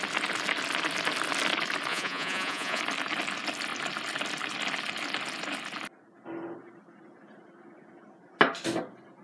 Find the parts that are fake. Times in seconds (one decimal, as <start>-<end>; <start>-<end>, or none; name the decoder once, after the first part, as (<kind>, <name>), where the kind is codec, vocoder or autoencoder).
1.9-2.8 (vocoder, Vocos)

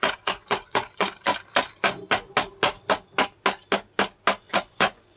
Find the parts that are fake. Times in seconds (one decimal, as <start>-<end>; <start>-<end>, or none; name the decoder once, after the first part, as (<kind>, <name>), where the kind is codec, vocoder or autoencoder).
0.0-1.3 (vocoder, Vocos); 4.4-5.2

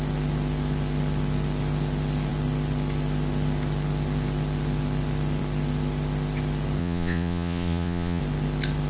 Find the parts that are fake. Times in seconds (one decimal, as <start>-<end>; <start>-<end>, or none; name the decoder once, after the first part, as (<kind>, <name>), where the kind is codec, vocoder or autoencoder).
6.8-8.2 (vocoder, Vocos)